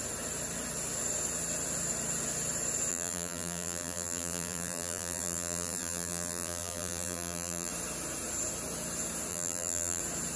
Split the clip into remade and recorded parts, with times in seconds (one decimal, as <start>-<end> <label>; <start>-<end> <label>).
0.0-2.9 recorded; 2.9-7.7 remade; 7.7-9.3 recorded; 9.3-10.0 remade; 10.0-10.4 recorded